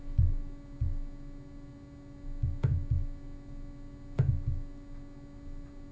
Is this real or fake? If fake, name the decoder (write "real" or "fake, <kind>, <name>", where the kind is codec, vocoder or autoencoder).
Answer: real